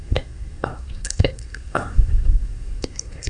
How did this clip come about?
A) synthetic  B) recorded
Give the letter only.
A